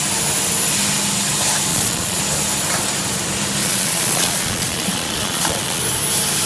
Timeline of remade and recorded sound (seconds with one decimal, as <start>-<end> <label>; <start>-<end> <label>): 0.0-1.7 recorded; 1.7-2.2 remade; 2.2-3.6 recorded; 3.6-5.8 remade; 5.8-6.5 recorded